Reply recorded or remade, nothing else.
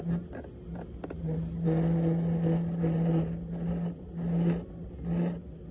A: recorded